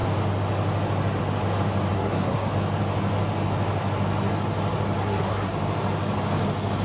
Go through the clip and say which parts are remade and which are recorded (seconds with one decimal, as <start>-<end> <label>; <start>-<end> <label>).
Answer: 0.0-1.9 recorded; 1.9-2.5 remade; 2.5-5.0 recorded; 5.0-5.5 remade; 5.5-6.8 recorded